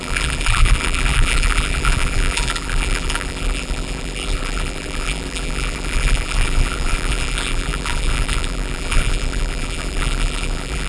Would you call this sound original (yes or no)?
no